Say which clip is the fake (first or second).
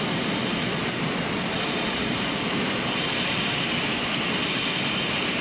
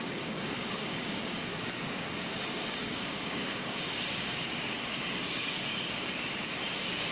second